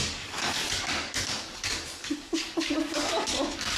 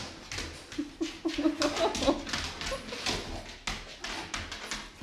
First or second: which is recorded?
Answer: second